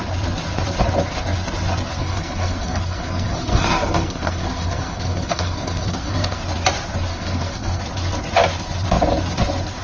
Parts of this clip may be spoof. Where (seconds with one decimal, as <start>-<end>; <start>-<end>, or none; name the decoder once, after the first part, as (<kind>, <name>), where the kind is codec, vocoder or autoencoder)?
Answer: 2.0-6.4 (codec, SNAC); 7.1-7.8